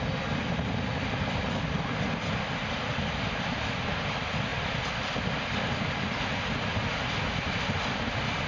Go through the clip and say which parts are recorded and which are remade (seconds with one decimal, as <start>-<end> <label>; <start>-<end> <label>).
0.0-8.5 recorded